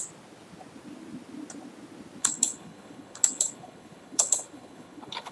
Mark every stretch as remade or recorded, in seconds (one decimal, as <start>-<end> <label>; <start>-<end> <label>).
0.0-2.2 recorded; 2.2-5.3 remade